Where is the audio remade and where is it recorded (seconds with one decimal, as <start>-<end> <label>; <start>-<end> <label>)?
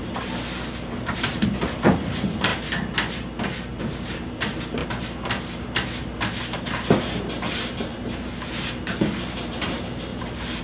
0.0-2.5 remade; 2.5-3.8 recorded; 3.8-4.8 remade; 4.8-7.2 recorded; 7.2-10.6 remade